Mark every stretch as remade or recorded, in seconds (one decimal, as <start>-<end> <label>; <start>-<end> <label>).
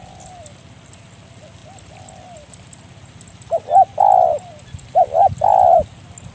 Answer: 0.0-6.3 recorded